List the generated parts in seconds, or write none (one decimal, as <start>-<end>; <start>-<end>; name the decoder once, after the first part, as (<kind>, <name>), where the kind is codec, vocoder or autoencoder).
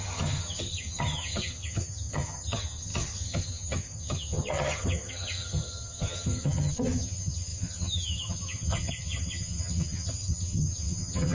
0.0-11.3 (vocoder, HiFi-GAN)